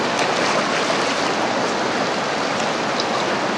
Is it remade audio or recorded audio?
recorded